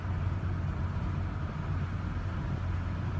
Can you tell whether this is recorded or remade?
recorded